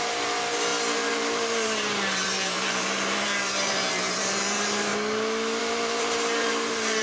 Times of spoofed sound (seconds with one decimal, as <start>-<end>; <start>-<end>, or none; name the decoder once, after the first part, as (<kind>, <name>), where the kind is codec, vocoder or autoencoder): 0.0-4.9 (vocoder, BigVGAN v2); 5.6-7.0